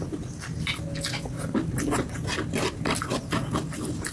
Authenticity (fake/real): real